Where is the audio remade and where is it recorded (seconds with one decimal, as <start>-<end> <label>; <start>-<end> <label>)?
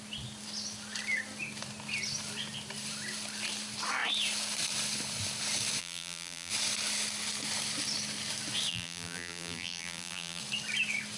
0.0-5.8 recorded; 5.8-6.5 remade; 6.5-8.7 recorded; 8.7-10.4 remade; 10.4-11.2 recorded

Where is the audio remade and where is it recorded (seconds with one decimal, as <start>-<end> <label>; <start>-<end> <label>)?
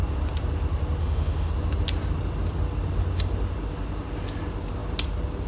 0.0-1.0 recorded; 1.0-1.5 remade; 1.5-5.5 recorded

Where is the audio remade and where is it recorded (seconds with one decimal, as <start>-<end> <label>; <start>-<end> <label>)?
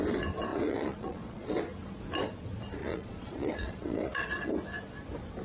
0.0-0.5 recorded; 0.5-1.5 remade; 1.5-2.8 recorded; 2.8-4.5 remade; 4.5-5.4 recorded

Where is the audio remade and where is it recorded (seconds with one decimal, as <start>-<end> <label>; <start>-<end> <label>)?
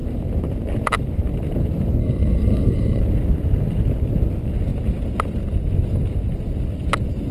0.0-2.0 recorded; 2.0-3.0 remade; 3.0-7.3 recorded